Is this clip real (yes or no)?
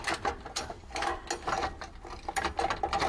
yes